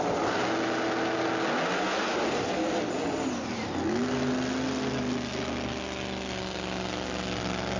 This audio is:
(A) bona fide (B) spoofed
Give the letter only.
A